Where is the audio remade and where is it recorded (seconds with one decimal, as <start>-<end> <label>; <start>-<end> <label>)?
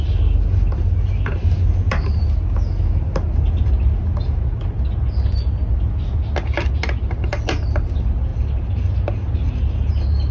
0.0-10.3 recorded